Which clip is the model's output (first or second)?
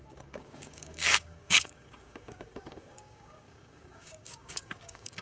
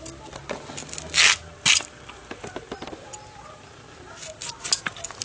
first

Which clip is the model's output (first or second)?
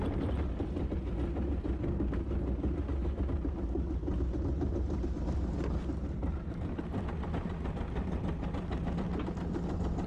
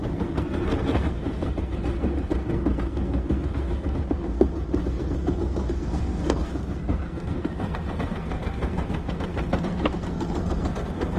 second